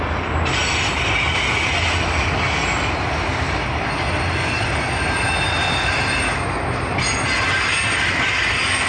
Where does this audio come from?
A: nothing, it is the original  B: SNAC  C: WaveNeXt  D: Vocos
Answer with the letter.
A